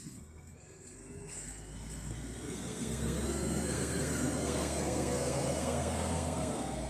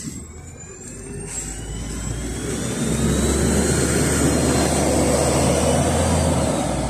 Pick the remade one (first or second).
first